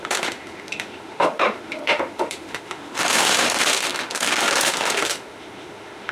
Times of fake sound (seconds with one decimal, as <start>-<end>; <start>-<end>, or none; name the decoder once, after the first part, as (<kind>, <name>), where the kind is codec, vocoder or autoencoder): 0.0-6.1 (autoencoder, DAC-VAE)